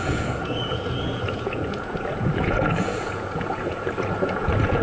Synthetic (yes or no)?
yes